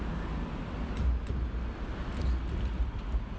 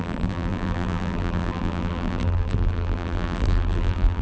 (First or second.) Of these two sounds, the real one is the first